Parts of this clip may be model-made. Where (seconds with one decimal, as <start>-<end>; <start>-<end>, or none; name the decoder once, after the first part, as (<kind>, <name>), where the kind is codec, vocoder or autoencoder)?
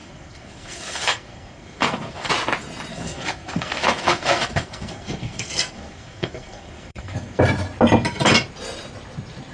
0.0-2.3 (codec, SNAC); 2.9-7.4